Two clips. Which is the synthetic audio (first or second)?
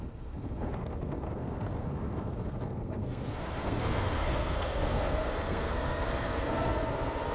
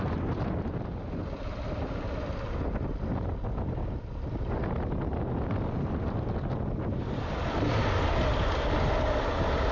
first